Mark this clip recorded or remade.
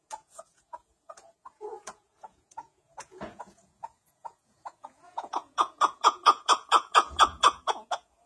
remade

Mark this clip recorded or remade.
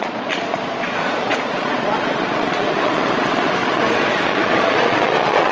remade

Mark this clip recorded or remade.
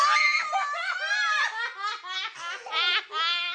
recorded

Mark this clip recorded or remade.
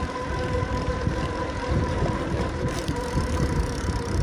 remade